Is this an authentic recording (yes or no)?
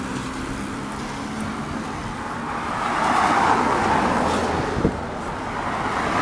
yes